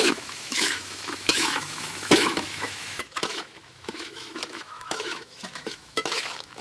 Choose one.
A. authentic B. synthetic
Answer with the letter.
B